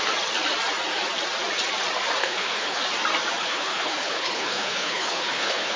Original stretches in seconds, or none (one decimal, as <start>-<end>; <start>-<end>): 0.0-2.2; 2.8-3.4